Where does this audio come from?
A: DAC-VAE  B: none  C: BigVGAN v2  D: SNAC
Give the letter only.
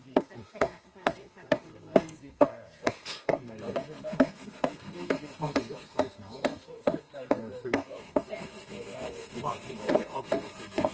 D